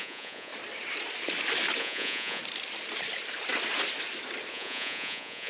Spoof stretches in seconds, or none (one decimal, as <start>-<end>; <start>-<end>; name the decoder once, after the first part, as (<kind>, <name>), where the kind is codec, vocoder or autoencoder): 0.0-0.5 (vocoder, Vocos); 1.8-2.4; 4.5-5.5